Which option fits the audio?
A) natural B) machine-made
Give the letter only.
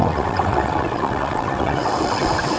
B